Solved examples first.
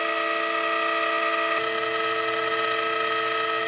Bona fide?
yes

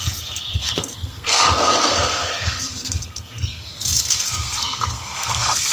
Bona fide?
no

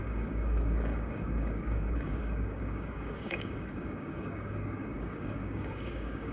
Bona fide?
no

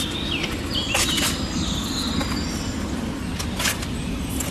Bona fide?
yes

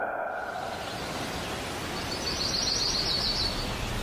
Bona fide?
yes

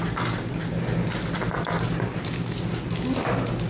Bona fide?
yes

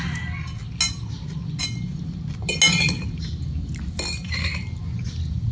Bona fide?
yes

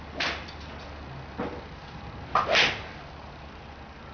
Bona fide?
yes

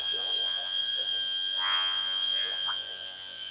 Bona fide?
no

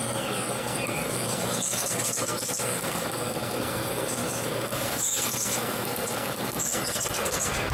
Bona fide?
no